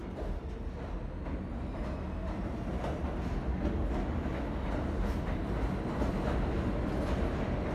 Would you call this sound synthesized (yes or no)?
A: no